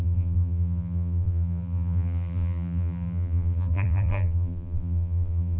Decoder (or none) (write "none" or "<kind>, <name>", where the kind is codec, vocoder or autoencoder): vocoder, BigVGAN v2